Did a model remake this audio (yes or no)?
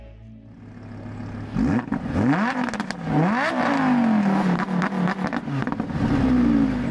no